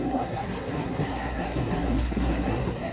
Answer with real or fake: fake